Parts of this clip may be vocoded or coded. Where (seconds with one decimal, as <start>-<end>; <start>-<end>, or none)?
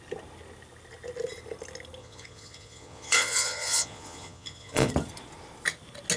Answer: 2.0-4.9